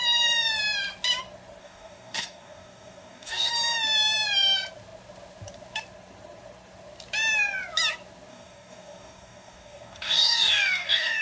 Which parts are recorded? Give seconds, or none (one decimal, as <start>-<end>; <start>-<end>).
0.0-1.6; 3.5-8.3